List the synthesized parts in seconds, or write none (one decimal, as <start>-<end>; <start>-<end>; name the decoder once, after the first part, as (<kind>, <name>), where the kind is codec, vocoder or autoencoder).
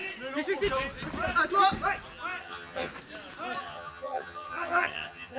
2.4-2.9 (vocoder, HiFi-GAN); 3.6-5.4